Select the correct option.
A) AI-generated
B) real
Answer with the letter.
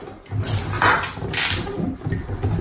B